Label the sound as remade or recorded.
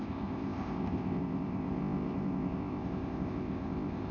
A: remade